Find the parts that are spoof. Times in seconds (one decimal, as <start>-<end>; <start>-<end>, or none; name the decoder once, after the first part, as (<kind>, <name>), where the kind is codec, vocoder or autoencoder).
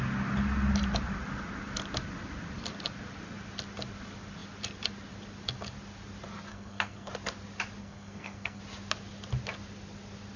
6.5-7.1 (codec, SNAC); 7.8-8.6